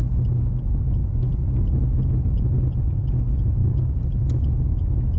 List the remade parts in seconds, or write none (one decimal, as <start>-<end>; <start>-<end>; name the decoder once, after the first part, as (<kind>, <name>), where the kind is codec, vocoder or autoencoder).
3.6-4.2 (codec, DAC)